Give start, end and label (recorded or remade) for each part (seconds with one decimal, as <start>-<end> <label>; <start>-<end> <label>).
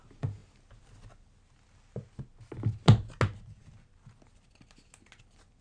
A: 0.0-5.6 recorded